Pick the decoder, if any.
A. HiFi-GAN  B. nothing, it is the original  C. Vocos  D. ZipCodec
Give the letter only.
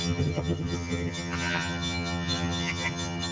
A